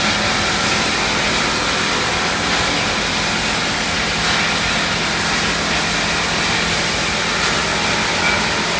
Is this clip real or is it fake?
real